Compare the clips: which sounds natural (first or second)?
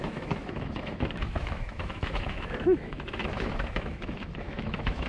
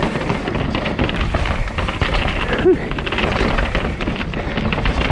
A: second